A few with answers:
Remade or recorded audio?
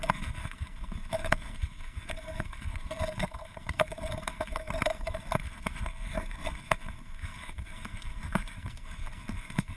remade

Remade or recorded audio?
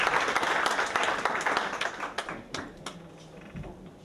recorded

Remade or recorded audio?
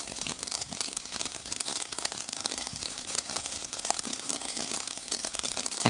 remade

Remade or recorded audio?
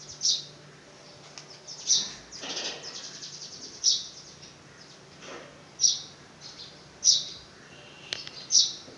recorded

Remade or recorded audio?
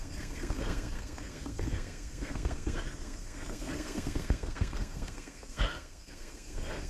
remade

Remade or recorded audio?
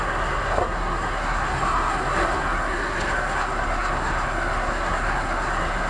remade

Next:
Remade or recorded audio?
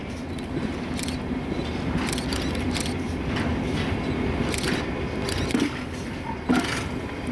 recorded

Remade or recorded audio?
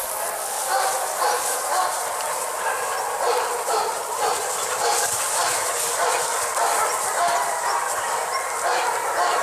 recorded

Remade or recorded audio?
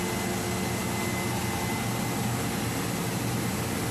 recorded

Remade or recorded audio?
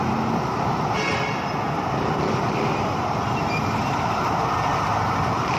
recorded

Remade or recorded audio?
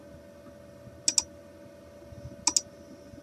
recorded